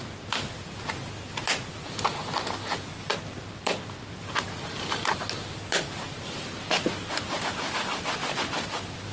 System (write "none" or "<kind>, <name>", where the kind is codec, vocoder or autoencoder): none